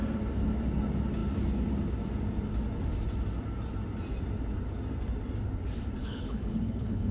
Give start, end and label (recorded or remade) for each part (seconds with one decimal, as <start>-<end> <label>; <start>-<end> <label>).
0.0-6.0 recorded; 6.0-7.1 remade